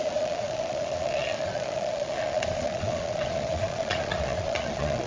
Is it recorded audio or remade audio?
remade